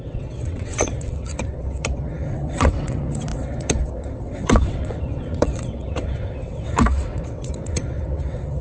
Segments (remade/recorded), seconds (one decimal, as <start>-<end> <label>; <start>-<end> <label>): 0.0-8.6 remade